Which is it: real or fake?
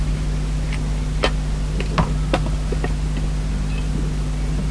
real